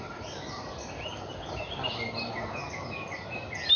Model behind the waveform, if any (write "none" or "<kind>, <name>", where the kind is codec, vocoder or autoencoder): none